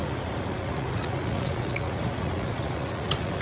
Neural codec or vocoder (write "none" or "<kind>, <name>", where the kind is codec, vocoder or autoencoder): vocoder, Vocos